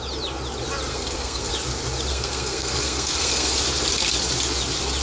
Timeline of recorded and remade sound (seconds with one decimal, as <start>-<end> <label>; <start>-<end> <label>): 0.0-0.9 recorded; 0.9-1.5 remade; 1.5-2.1 recorded; 2.1-3.5 remade; 3.5-5.0 recorded